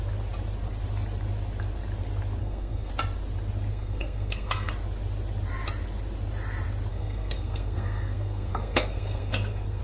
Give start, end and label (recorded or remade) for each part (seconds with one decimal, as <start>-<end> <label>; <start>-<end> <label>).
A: 0.0-2.4 recorded; 2.4-2.9 remade; 2.9-3.7 recorded; 3.7-4.7 remade; 4.7-6.9 recorded; 6.9-9.8 remade